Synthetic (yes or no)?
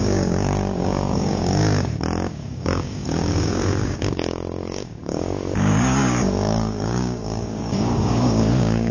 yes